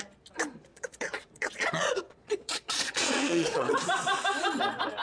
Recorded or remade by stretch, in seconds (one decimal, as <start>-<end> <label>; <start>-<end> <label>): 0.0-0.7 recorded; 0.7-3.7 remade; 3.7-5.0 recorded